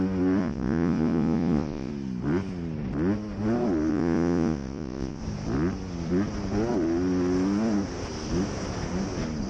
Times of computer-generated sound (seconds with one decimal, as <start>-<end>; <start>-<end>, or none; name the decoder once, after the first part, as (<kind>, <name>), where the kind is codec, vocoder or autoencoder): 0.4-1.9 (vocoder, Vocos); 3.9-5.2